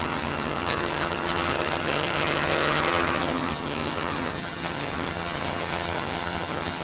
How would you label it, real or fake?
fake